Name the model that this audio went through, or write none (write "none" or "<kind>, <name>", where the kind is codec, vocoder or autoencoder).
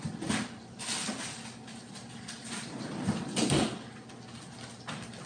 none